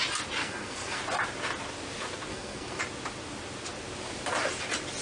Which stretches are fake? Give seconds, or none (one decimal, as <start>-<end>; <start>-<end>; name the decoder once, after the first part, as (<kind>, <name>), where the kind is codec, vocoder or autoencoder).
0.4-1.0 (codec, SNAC); 2.3-2.8